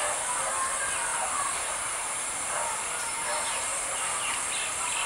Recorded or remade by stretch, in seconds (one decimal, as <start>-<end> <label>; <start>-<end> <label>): 0.0-1.1 recorded; 1.1-4.2 remade; 4.2-5.1 recorded